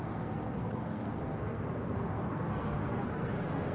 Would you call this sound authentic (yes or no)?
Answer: no